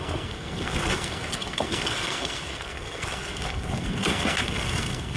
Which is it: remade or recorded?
remade